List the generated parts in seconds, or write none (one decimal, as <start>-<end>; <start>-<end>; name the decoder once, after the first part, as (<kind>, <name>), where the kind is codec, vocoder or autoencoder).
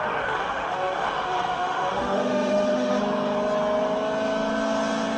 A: 0.0-3.0 (autoencoder, DAC-VAE)